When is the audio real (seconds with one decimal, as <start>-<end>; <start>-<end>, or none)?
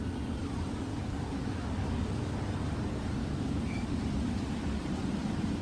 0.0-0.9; 2.3-3.2; 4.0-5.6